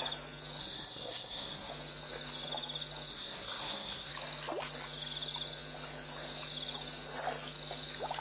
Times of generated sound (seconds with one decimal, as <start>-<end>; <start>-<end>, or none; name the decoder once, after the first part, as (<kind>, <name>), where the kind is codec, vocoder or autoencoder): 0.6-1.7 (codec, SNAC); 3.1-4.1